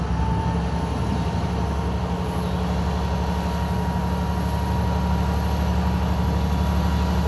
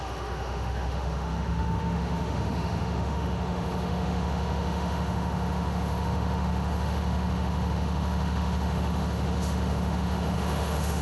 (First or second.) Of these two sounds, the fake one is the second